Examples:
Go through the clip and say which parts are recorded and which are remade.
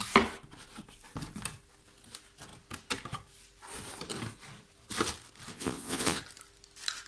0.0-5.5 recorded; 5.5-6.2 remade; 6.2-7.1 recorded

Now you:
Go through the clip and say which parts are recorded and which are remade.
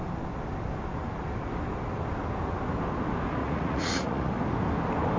0.0-3.4 recorded; 3.4-4.3 remade; 4.3-5.2 recorded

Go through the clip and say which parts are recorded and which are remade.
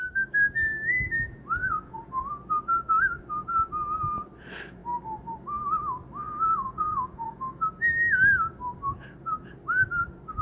0.0-1.6 recorded; 1.6-2.2 remade; 2.2-6.2 recorded; 6.2-7.6 remade; 7.6-10.4 recorded